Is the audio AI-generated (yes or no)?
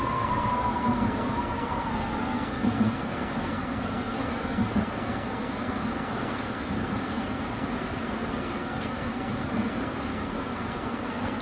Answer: yes